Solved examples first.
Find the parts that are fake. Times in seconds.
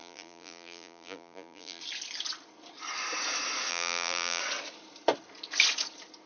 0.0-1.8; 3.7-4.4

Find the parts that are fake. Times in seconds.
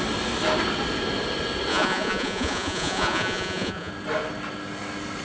1.7-3.9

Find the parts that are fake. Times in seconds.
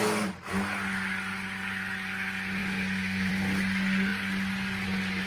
2.6-3.3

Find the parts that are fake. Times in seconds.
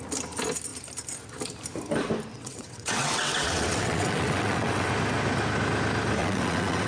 2.3-4.9; 6.2-6.9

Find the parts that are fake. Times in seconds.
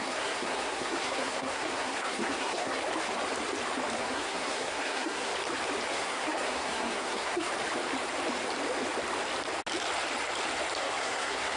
0.0-2.8; 4.0-5.3; 5.9-7.5; 10.8-11.6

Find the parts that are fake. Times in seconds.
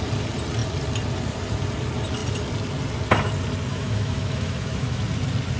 3.7-5.0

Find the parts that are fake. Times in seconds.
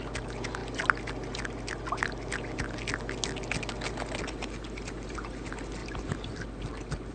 none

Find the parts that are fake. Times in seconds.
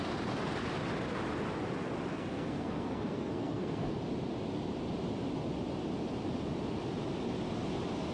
2.1-3.9